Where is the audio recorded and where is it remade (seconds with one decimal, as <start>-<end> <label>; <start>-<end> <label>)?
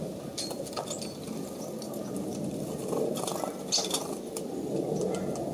0.0-5.5 recorded